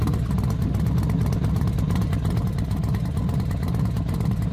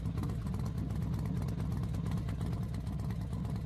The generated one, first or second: first